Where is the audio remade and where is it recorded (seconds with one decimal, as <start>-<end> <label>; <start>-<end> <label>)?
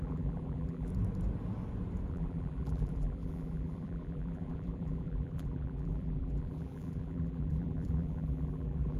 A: 0.0-0.9 remade; 0.9-2.1 recorded; 2.1-9.0 remade